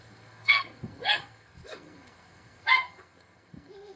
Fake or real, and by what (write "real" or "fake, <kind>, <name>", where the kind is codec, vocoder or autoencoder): fake, codec, SNAC